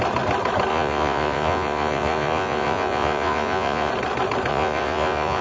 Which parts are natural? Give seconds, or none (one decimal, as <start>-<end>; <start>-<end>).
0.0-0.7; 3.9-4.5